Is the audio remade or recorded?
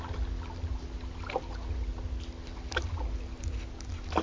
recorded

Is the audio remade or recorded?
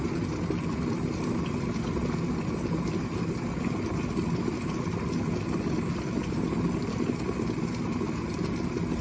recorded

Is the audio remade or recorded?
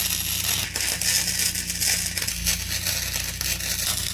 recorded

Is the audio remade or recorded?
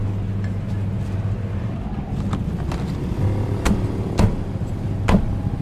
recorded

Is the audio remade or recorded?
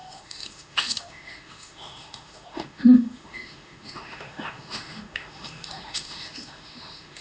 remade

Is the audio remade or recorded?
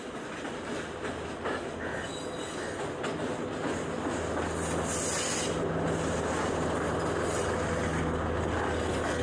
recorded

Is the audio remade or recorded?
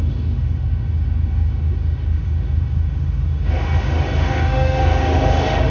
remade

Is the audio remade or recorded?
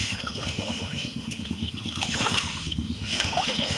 remade